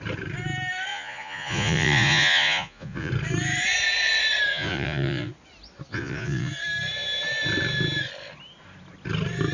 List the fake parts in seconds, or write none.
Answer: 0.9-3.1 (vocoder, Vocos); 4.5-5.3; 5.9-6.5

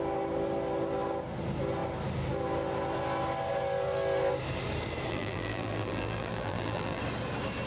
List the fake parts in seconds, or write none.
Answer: 5.1-7.0 (vocoder, BigVGAN v2)